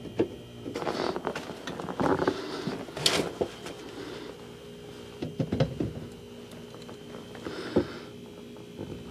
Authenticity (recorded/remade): recorded